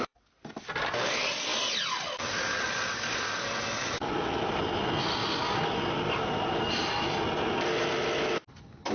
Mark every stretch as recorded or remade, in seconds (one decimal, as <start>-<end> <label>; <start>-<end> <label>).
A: 0.0-8.9 recorded